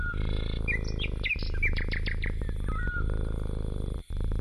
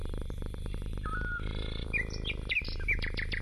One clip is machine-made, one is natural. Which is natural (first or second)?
first